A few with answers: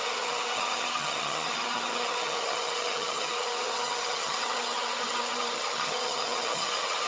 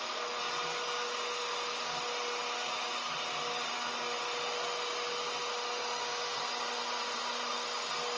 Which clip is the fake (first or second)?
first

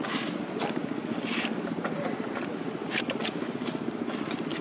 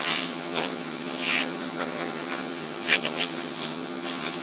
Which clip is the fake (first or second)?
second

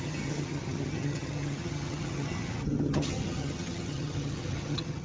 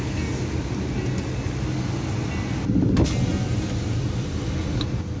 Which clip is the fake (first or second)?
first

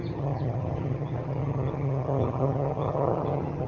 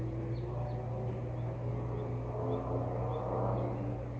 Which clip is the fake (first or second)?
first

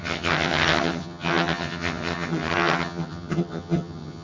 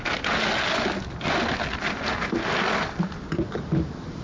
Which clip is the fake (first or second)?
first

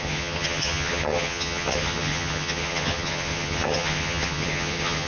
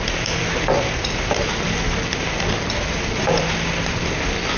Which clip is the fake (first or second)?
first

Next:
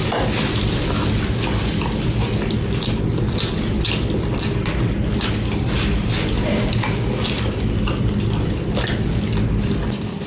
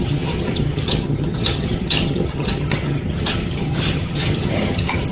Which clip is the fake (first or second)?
second